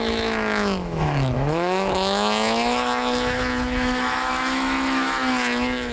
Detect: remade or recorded remade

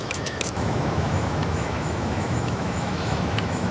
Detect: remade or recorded remade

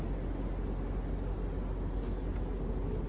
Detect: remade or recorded recorded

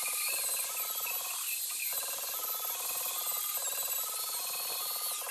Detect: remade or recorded recorded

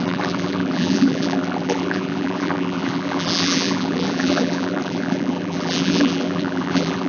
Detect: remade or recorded remade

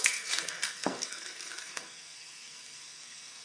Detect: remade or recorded remade